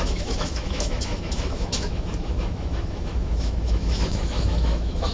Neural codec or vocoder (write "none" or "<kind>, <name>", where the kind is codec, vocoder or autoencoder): autoencoder, DAC-VAE